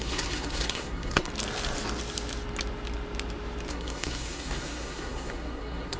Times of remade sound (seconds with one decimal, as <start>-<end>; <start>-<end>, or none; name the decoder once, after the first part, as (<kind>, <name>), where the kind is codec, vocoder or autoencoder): 0.0-1.3 (codec, SNAC); 3.7-6.0